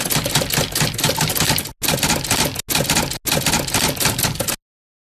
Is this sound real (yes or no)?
yes